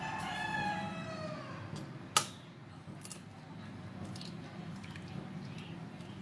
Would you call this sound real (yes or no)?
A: yes